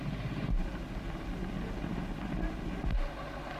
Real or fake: real